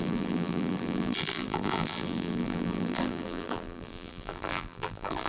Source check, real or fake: fake